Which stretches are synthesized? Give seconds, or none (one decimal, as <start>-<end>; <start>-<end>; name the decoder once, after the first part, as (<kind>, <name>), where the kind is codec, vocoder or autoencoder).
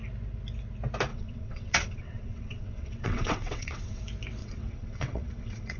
1.1-4.0 (vocoder, WaveNeXt); 4.4-5.8